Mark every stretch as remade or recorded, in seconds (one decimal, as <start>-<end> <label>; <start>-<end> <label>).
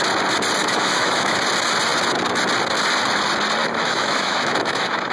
0.0-0.6 recorded; 0.6-1.4 remade; 1.4-3.6 recorded; 3.6-5.1 remade